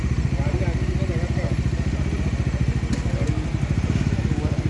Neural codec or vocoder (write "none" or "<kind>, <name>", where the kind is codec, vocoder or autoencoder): none